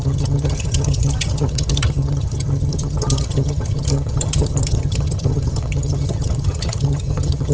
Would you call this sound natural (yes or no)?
no